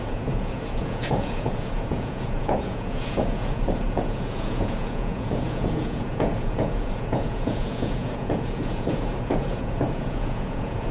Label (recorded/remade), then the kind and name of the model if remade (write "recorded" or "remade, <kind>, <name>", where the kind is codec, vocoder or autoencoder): remade, vocoder, Vocos